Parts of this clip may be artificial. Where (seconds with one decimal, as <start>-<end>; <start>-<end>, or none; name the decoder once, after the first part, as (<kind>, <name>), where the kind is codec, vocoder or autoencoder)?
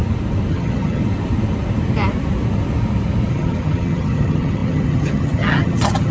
0.5-1.0 (vocoder, HiFi-GAN); 3.3-6.1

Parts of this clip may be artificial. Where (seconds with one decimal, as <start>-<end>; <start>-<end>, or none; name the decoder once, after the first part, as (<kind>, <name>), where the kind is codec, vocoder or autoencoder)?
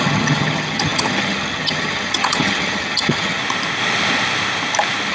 0.0-3.4 (vocoder, HiFi-GAN)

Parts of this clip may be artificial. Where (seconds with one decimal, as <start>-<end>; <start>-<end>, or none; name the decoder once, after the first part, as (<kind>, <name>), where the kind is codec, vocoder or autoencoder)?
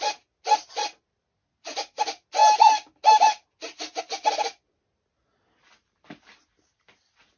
none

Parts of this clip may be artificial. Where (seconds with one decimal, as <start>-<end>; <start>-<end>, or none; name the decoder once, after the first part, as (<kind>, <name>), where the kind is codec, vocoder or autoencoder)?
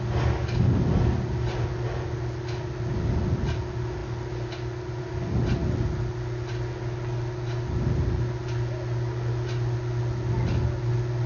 none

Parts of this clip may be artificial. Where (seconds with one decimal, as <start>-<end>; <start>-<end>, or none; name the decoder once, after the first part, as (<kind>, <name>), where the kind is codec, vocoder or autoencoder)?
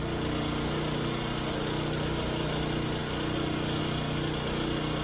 none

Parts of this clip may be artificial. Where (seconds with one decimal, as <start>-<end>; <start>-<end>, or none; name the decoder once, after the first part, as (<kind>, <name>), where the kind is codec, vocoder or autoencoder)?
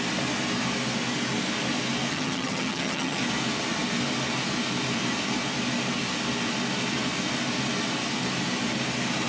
2.1-3.2 (vocoder, HiFi-GAN)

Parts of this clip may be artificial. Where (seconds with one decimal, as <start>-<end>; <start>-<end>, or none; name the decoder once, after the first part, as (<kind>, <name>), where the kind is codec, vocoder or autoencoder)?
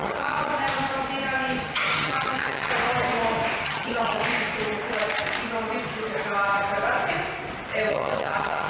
0.0-0.5 (vocoder, HiFi-GAN); 1.6-2.7; 3.6-4.2; 7.9-8.7